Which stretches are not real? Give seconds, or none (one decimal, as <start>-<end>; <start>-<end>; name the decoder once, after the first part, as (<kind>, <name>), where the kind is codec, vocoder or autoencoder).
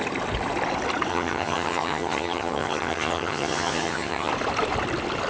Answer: 1.1-4.3 (vocoder, HiFi-GAN)